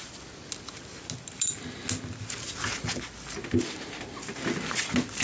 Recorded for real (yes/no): yes